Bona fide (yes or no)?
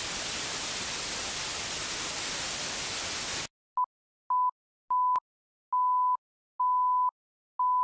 yes